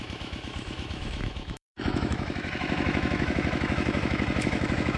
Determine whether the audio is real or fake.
fake